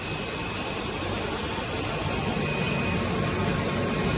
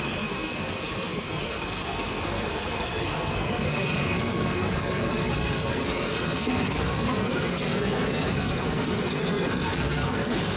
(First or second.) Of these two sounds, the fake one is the second